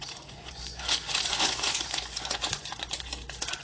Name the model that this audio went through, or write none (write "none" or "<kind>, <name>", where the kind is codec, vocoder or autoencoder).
vocoder, Vocos